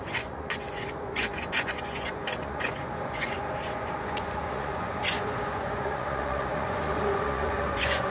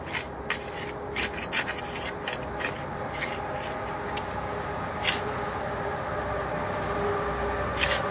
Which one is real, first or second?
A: second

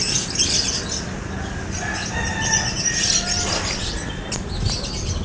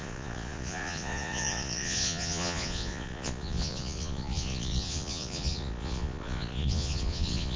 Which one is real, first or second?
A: first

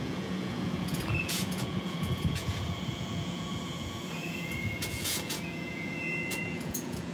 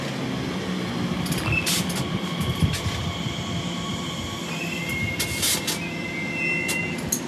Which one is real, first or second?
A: second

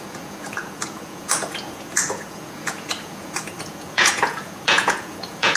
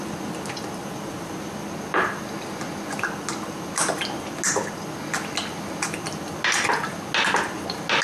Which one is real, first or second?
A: second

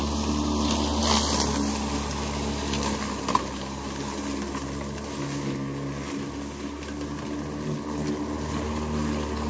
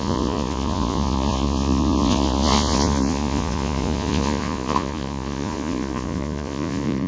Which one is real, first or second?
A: first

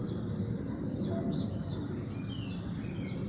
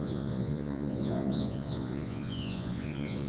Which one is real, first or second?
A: first